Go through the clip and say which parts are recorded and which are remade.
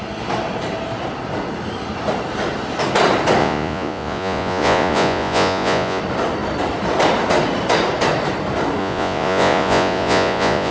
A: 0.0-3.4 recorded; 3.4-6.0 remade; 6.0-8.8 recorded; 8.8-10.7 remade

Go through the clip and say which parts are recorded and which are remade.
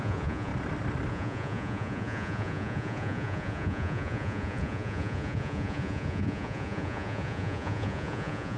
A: 0.0-0.5 remade; 0.5-1.1 recorded; 1.1-8.6 remade